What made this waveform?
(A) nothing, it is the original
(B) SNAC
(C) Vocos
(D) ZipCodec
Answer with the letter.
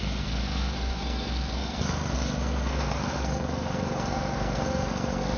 B